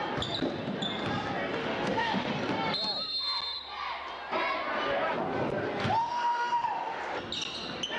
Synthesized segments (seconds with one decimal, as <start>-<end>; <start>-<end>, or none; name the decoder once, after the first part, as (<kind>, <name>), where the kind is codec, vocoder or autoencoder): 1.6-2.3 (autoencoder, DAC-VAE); 6.0-7.0

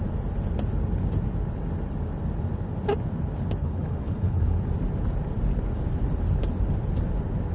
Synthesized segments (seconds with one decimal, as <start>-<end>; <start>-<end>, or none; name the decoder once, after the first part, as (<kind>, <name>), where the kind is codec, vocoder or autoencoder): 3.6-4.6 (codec, HILCodec)

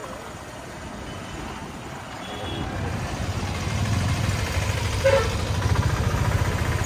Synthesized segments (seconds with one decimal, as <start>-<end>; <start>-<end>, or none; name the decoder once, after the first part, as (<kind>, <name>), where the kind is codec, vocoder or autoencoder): 0.0-1.1 (vocoder, BigVGAN v2)

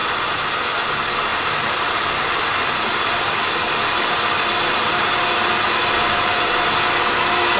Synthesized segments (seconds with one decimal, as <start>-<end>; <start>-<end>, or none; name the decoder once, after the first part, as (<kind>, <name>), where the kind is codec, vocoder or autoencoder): 1.3-5.9 (vocoder, BigVGAN v2)